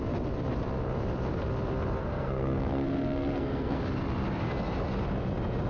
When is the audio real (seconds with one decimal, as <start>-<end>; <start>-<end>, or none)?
0.0-2.0; 3.8-5.7